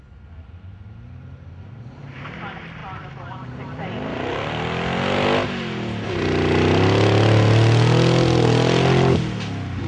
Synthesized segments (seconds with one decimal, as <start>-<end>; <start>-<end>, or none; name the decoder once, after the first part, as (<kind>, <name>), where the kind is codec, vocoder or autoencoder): none